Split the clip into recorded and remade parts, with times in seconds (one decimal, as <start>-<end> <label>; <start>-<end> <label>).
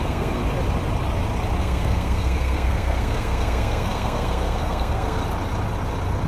0.0-0.4 remade; 0.4-1.6 recorded; 1.6-5.2 remade; 5.2-6.3 recorded